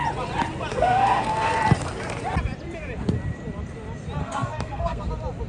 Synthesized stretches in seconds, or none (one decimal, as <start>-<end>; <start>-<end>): 0.7-1.6; 4.2-5.1